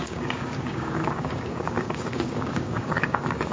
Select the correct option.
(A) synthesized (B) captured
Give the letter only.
A